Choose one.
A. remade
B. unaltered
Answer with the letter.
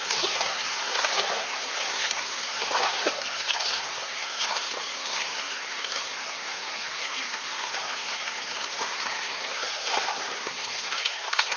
A